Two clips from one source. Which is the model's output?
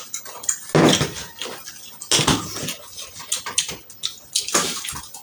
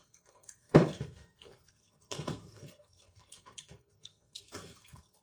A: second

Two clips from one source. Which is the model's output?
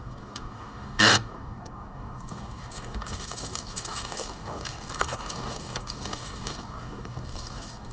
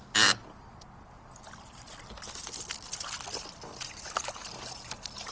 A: first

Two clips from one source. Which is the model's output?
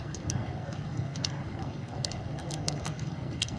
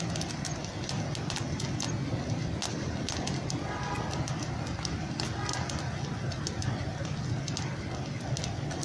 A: first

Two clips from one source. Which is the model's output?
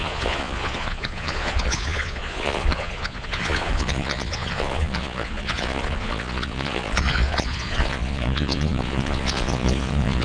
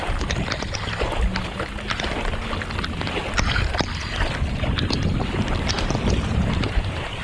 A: first